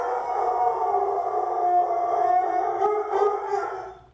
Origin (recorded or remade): recorded